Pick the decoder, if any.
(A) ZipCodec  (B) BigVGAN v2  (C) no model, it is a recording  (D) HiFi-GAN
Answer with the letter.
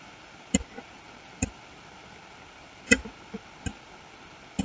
C